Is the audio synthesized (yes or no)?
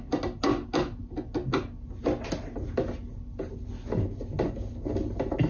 no